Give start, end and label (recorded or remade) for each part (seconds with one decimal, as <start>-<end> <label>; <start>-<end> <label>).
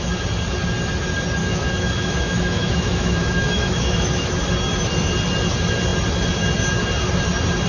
0.0-1.4 recorded; 1.4-4.3 remade; 4.3-7.7 recorded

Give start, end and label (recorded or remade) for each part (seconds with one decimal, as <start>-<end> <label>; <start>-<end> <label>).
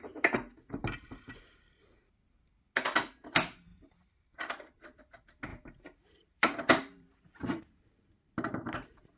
0.0-3.7 recorded; 3.7-5.0 remade; 5.0-5.5 recorded; 5.5-7.6 remade; 7.6-9.2 recorded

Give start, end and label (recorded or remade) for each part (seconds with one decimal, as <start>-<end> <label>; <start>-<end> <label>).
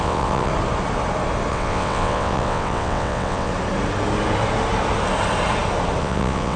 0.0-0.5 remade; 0.5-1.5 recorded; 1.5-3.5 remade; 3.5-6.0 recorded; 6.0-6.6 remade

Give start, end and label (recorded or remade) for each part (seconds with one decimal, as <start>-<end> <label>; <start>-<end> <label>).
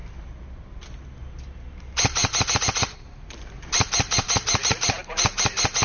0.0-1.8 recorded; 1.8-2.2 remade; 2.2-3.0 recorded; 3.0-5.8 remade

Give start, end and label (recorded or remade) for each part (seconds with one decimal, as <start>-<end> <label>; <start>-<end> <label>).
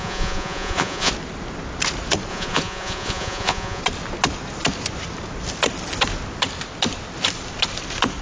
0.0-1.1 remade; 1.1-2.3 recorded; 2.3-3.8 remade; 3.8-8.2 recorded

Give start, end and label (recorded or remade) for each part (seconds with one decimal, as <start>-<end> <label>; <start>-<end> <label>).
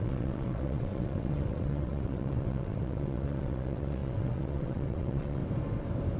0.0-5.4 remade; 5.4-6.2 recorded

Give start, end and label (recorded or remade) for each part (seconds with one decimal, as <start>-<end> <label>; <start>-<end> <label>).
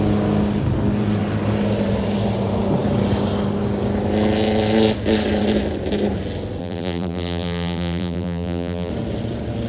0.0-6.6 recorded; 6.6-8.9 remade; 8.9-9.7 recorded